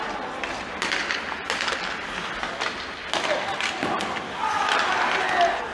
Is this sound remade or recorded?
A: recorded